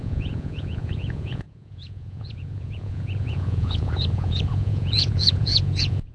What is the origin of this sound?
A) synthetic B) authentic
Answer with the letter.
A